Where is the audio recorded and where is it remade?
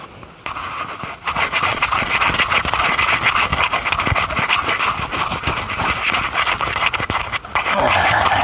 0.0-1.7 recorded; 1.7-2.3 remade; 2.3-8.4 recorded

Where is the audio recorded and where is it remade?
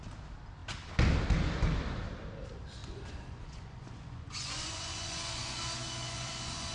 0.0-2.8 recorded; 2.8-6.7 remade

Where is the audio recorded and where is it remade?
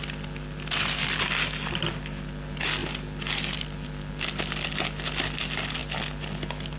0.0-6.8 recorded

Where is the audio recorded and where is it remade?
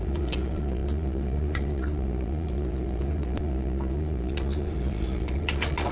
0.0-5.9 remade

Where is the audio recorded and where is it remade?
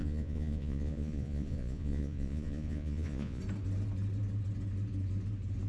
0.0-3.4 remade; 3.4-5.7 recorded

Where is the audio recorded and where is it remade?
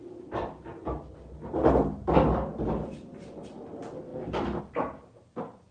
0.0-5.7 recorded